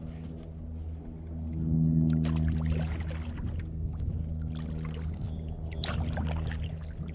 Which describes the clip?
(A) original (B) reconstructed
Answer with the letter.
A